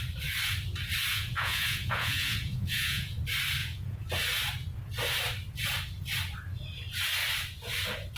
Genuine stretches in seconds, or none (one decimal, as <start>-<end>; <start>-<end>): 0.0-1.1; 3.2-3.6; 4.1-8.2